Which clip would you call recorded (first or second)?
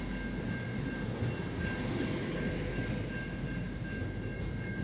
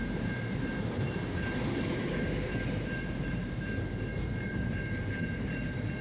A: first